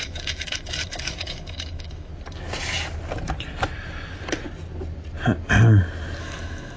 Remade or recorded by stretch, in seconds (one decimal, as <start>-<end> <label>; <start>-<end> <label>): 0.0-2.1 remade; 2.1-6.2 recorded; 6.2-6.8 remade